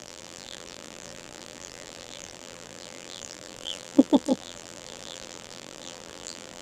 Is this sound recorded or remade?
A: remade